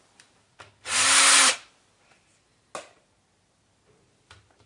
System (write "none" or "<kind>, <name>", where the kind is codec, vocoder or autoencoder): none